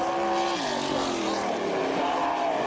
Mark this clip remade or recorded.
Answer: recorded